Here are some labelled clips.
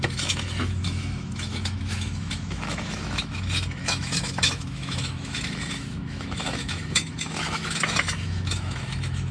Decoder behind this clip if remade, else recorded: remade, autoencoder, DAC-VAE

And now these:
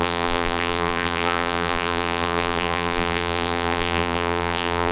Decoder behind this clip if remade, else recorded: remade, vocoder, BigVGAN v2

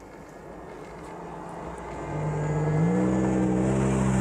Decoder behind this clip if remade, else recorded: recorded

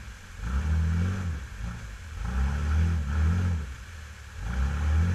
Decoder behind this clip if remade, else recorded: recorded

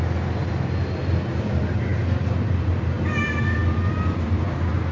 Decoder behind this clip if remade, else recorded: recorded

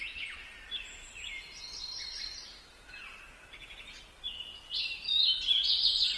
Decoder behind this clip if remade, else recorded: recorded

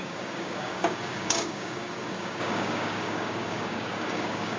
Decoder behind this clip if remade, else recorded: remade, codec, DAC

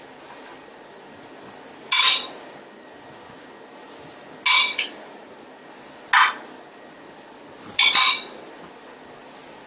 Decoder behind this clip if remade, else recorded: recorded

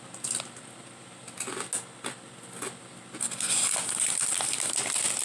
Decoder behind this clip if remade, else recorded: recorded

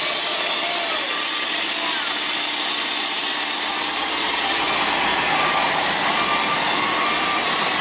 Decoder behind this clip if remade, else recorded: recorded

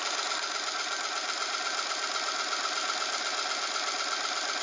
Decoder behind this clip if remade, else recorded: recorded